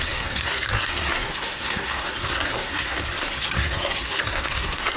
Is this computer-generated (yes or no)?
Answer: yes